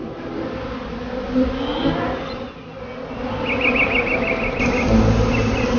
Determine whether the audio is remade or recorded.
recorded